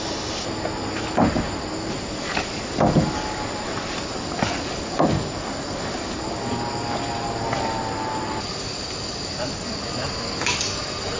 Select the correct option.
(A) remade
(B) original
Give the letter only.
B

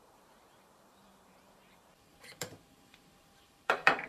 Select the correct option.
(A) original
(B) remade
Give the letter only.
B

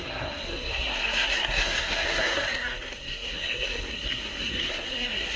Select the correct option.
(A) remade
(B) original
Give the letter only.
A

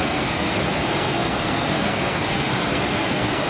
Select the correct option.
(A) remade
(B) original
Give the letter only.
A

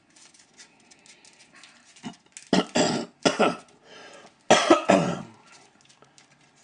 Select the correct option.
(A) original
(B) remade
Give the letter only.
A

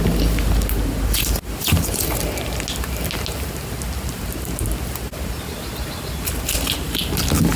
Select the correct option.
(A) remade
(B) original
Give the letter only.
B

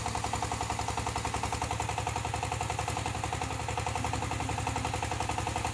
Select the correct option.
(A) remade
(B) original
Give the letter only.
B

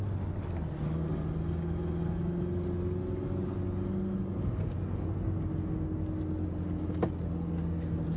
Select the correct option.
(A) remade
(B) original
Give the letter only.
B